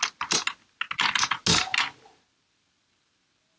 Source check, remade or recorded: recorded